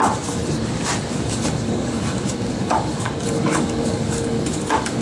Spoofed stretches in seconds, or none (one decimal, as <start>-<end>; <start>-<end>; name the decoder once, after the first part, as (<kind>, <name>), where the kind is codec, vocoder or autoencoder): 0.0-0.4 (codec, DAC); 1.1-5.0